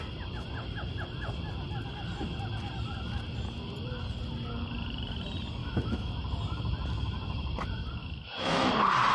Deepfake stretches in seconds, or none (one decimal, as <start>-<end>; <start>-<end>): 5.6-6.1; 8.0-8.7